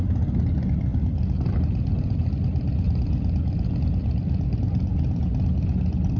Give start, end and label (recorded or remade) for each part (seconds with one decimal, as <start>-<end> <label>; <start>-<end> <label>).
0.0-6.2 recorded